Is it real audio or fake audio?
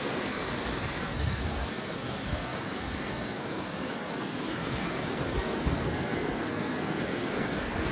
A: fake